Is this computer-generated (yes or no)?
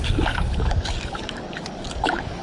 yes